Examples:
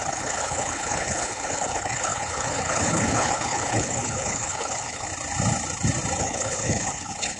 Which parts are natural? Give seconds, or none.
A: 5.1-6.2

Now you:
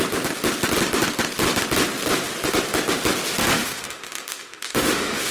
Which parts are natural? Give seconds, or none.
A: 0.0-3.6